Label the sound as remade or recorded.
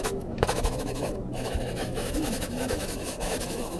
remade